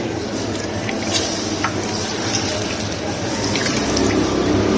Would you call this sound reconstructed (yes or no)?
no